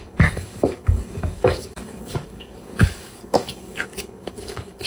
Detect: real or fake fake